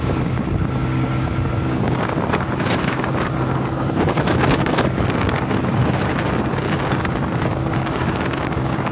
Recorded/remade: remade